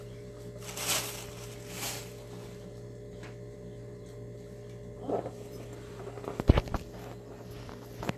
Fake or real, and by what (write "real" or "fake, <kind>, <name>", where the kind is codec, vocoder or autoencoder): real